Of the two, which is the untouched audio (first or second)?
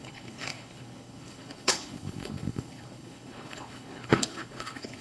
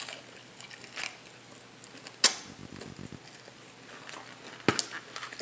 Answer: second